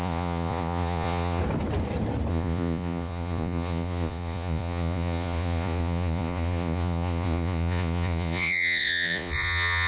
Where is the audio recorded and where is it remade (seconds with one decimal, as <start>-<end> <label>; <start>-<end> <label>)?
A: 0.0-1.4 remade; 1.4-2.3 recorded; 2.3-9.9 remade